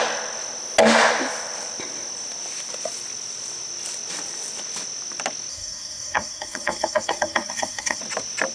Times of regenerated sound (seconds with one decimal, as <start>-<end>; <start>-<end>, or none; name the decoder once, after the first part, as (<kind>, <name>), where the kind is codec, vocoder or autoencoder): 5.5-8.0 (codec, SNAC)